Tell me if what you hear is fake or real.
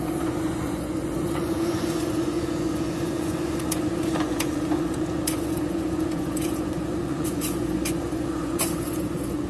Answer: fake